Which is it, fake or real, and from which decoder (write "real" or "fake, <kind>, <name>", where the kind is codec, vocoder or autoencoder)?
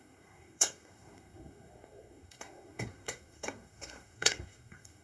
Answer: fake, codec, SNAC